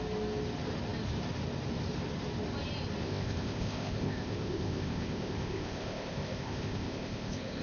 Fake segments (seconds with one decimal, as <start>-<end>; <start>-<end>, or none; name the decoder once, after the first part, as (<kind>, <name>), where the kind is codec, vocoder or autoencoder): 3.0-7.6 (codec, ZipCodec)